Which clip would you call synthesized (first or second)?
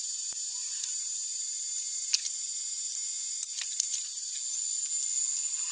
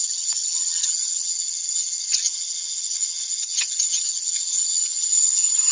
second